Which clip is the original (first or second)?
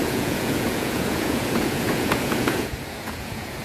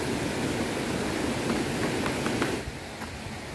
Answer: second